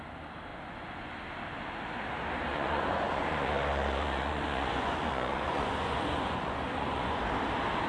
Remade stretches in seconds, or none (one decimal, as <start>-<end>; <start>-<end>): 0.5-1.1; 2.5-7.2